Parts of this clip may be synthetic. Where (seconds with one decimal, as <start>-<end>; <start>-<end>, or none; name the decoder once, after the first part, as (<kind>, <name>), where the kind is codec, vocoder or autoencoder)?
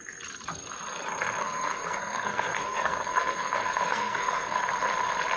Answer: 1.4-4.6 (codec, SNAC)